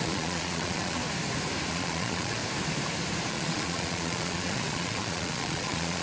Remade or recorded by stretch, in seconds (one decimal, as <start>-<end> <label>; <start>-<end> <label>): 0.0-1.0 remade; 1.0-1.7 recorded; 1.7-2.4 remade; 2.4-3.3 recorded; 3.3-6.0 remade